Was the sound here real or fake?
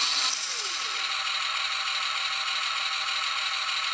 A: real